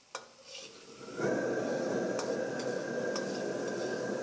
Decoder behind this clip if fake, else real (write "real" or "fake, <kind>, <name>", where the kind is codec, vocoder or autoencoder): real